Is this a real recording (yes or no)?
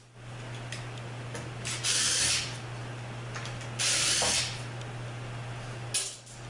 yes